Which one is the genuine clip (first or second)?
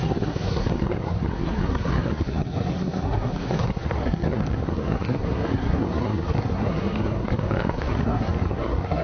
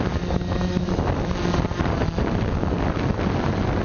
second